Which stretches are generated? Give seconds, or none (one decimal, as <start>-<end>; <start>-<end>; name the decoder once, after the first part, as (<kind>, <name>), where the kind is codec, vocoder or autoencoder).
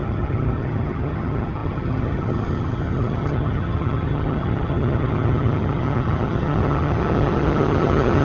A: 0.0-8.2 (vocoder, HiFi-GAN)